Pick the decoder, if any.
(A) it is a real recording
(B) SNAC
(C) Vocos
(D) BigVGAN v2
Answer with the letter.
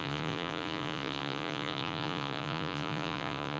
C